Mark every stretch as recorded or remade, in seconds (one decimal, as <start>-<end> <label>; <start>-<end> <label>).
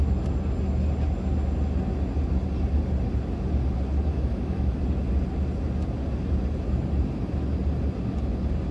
0.0-4.1 recorded; 4.1-4.8 remade; 4.8-8.7 recorded